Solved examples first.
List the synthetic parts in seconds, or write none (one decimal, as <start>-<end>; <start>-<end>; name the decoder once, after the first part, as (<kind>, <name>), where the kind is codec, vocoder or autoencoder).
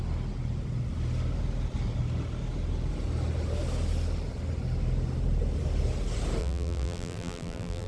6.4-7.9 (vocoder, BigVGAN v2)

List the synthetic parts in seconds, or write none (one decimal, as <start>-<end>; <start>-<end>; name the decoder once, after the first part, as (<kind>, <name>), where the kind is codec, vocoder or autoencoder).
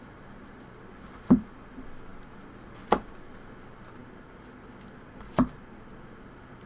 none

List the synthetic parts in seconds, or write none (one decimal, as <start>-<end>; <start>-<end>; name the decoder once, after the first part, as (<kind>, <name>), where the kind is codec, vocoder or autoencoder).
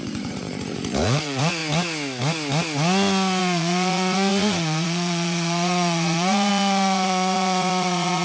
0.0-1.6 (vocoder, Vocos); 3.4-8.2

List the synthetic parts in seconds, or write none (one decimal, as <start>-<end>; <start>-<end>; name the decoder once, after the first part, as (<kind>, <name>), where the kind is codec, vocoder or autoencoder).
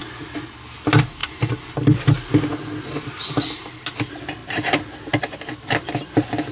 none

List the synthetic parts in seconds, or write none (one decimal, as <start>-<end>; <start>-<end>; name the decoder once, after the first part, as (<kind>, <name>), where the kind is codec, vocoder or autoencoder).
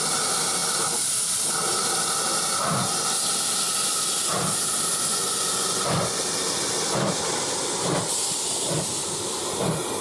5.1-6.2 (vocoder, Vocos)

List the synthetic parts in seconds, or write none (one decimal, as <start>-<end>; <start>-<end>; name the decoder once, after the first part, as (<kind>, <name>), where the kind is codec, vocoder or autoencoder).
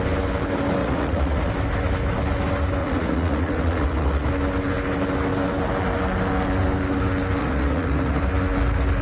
0.8-1.5 (vocoder, Vocos); 2.8-4.3; 7.4-8.2